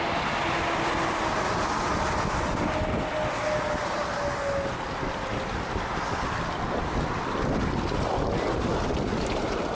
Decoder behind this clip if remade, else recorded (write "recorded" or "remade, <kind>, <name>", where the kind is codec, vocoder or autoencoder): recorded